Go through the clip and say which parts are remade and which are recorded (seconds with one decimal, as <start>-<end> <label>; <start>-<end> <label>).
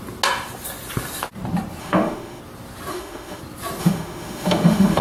0.0-1.8 recorded; 1.8-2.4 remade; 2.4-2.9 recorded; 2.9-3.4 remade; 3.4-3.8 recorded; 3.8-5.0 remade